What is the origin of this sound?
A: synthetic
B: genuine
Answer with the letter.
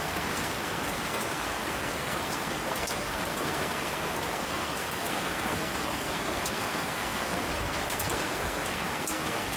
A